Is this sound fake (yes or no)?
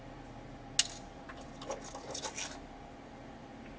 no